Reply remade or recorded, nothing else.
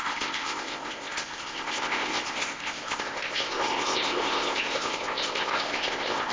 remade